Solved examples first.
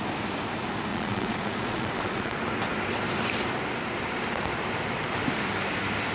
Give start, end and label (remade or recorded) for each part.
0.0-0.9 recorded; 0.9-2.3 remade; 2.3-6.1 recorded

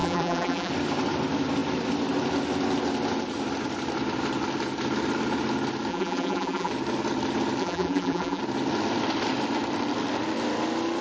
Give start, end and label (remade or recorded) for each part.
0.0-0.7 remade; 0.7-5.9 recorded; 5.9-6.7 remade; 6.7-7.6 recorded; 7.6-8.4 remade; 8.4-11.0 recorded